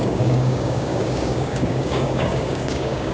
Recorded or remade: remade